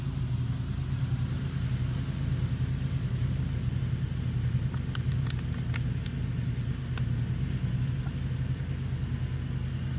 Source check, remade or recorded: recorded